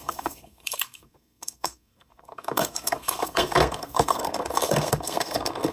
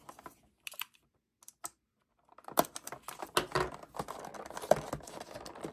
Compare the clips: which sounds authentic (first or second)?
second